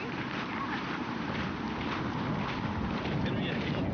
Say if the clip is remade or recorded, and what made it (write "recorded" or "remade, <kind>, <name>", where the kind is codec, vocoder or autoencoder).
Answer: remade, vocoder, BigVGAN v2